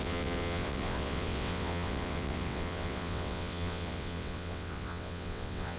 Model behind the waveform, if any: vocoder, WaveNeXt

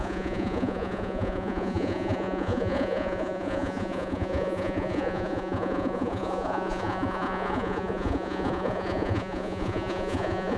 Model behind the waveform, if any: vocoder, Vocos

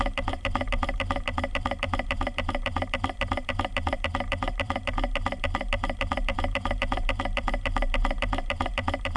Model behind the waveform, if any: vocoder, BigVGAN v2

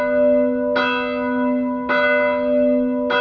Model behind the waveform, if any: none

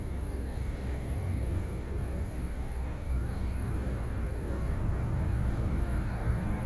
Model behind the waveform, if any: codec, DAC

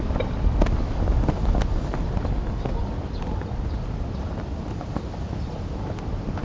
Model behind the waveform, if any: none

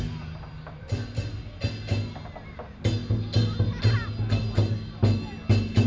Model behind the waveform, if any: none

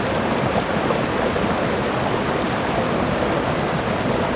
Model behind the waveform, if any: none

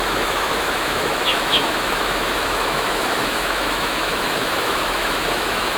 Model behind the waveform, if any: autoencoder, DAC-VAE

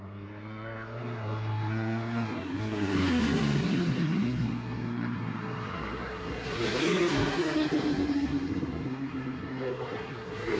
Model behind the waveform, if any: codec, SNAC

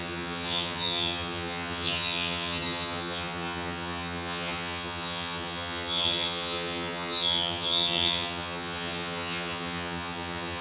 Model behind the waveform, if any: vocoder, HiFi-GAN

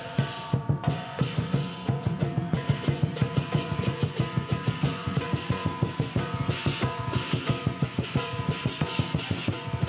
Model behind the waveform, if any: vocoder, Vocos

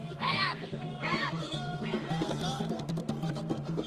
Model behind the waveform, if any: codec, SNAC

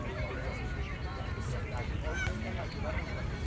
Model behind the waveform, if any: none